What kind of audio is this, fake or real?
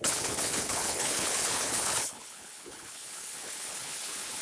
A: fake